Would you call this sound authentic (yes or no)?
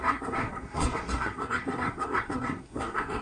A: no